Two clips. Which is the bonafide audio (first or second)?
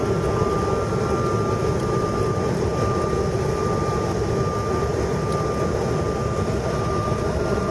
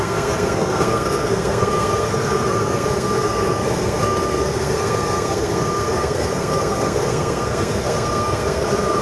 first